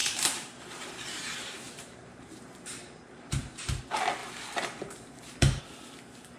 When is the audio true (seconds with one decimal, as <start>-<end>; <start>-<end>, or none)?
3.8-4.2; 5.6-6.4